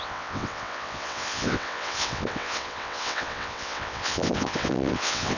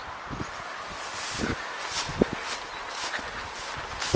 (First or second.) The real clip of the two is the second